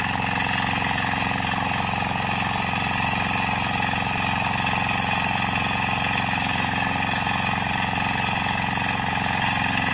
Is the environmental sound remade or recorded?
recorded